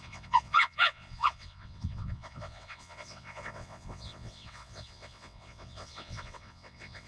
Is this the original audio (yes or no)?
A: no